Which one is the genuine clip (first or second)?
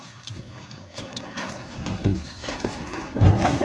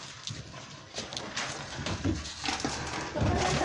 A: second